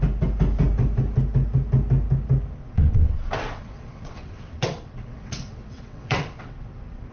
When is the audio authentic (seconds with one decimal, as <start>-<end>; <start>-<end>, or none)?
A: 0.0-2.6